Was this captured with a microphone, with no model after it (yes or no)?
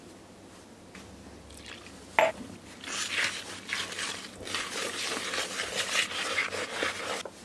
yes